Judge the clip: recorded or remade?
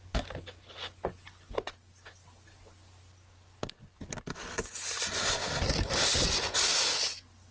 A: recorded